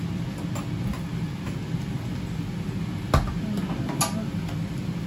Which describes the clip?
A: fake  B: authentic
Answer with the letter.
B